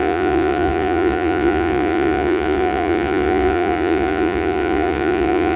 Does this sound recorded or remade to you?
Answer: remade